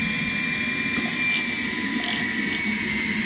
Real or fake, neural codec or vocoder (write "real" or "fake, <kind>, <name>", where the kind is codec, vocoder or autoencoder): real